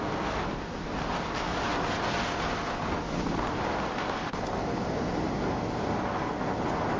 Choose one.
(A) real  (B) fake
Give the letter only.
A